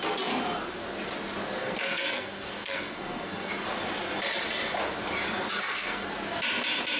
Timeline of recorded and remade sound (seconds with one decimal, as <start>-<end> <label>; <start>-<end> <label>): 0.0-1.6 recorded; 1.6-3.5 remade; 3.5-5.6 recorded; 5.6-6.1 remade; 6.1-7.0 recorded